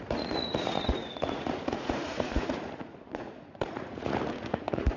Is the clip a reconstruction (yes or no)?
yes